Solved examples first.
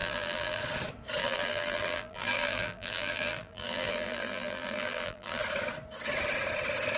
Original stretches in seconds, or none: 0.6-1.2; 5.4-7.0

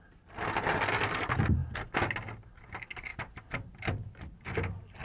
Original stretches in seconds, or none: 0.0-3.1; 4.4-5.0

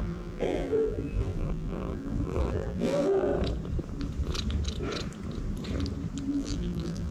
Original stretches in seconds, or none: 3.3-6.3